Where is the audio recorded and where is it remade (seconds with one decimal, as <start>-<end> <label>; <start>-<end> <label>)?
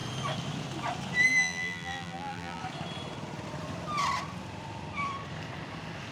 0.0-1.3 recorded; 1.3-2.6 remade; 2.6-6.1 recorded